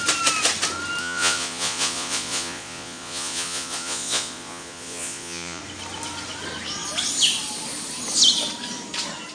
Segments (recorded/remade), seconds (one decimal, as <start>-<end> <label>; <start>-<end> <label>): 0.0-1.0 recorded; 1.0-5.6 remade; 5.6-9.3 recorded